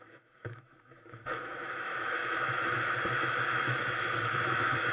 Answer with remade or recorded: remade